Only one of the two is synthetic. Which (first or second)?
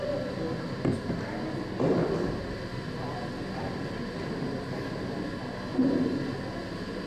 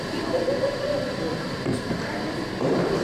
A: second